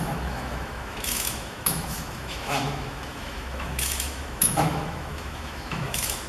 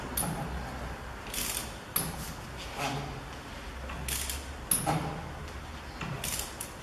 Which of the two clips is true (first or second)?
second